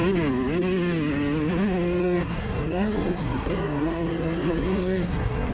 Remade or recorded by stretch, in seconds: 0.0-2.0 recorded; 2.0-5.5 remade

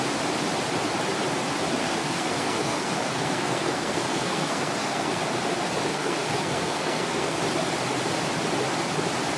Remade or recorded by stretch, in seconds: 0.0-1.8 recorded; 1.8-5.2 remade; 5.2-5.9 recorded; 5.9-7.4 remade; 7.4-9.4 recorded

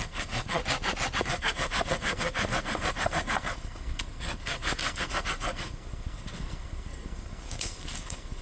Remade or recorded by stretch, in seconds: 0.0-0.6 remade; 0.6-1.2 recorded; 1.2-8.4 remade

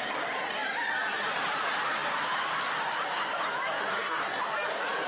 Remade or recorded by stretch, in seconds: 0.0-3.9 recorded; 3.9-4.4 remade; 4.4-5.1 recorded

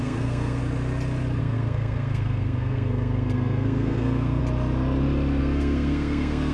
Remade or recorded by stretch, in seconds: 0.0-0.6 remade; 0.6-1.4 recorded; 1.4-4.4 remade; 4.4-5.4 recorded; 5.4-6.5 remade

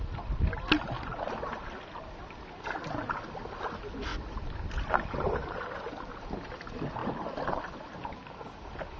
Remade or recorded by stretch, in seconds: 0.0-9.0 recorded

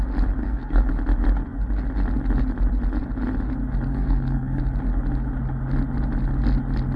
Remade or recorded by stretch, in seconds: 0.0-0.4 recorded; 0.4-0.9 remade; 0.9-3.9 recorded; 3.9-4.6 remade; 4.6-7.0 recorded